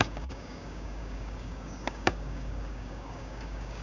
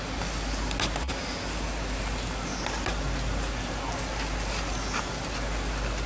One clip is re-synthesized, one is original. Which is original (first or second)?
second